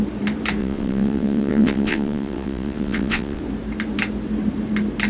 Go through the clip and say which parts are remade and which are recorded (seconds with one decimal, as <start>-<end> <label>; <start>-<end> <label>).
0.0-0.6 recorded; 0.6-3.4 remade; 3.4-5.1 recorded